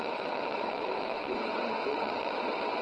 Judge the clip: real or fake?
fake